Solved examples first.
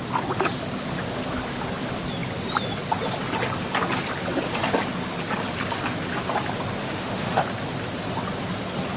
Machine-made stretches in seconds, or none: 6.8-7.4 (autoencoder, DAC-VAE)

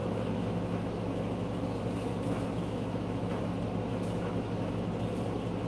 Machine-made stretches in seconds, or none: 0.0-3.4 (autoencoder, DAC-VAE); 3.9-4.7

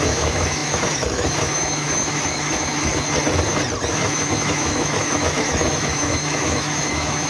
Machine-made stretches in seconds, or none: 0.0-2.9 (autoencoder, DAC-VAE); 3.9-7.3

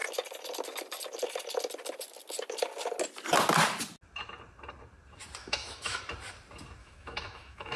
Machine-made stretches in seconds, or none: 5.4-6.0 (autoencoder, DAC-VAE); 6.8-7.8

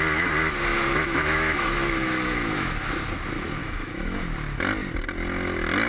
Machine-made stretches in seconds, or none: 0.7-2.7 (autoencoder, DAC-VAE); 3.6-4.2